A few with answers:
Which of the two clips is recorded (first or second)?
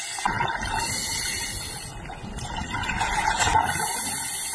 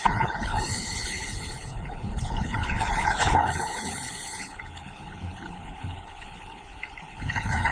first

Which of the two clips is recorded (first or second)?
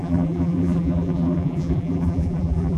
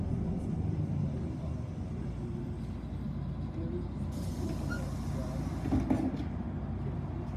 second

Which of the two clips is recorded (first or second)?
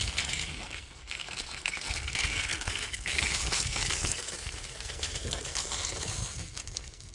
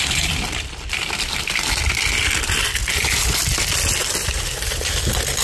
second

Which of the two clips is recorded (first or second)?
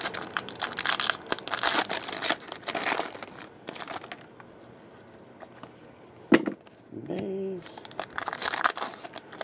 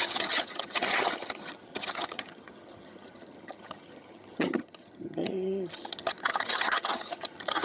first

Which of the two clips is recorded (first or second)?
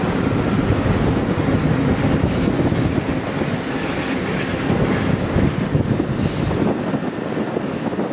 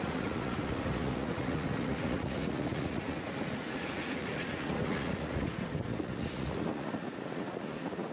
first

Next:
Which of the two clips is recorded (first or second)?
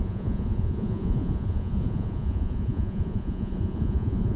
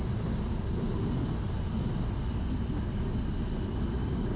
second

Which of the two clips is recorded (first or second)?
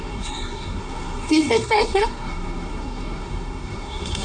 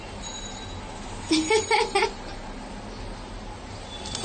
second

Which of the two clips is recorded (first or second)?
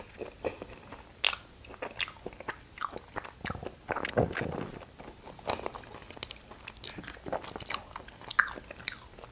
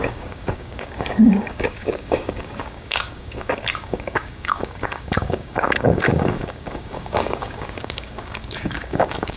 first